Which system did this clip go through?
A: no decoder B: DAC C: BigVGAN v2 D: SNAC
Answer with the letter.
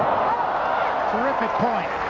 A